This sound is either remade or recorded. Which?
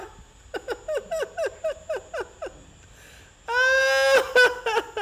recorded